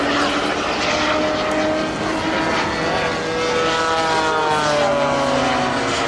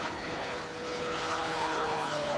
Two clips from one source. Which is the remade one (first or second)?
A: second